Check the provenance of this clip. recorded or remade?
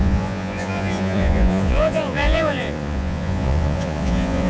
remade